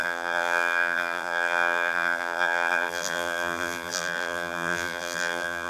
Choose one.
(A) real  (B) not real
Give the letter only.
B